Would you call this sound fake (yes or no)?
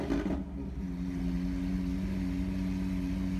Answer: no